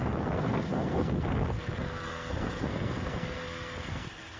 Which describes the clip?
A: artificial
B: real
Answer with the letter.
A